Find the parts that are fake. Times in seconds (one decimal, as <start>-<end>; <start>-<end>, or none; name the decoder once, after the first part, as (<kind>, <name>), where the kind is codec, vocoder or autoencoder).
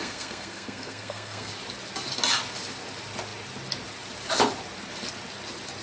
0.0-1.5 (codec, SNAC)